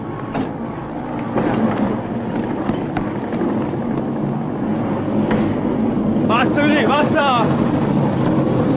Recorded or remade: recorded